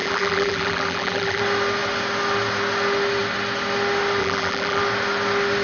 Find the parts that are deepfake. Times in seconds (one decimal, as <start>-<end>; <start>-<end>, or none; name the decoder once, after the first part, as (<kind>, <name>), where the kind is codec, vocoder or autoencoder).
0.0-1.4 (vocoder, BigVGAN v2); 4.2-4.8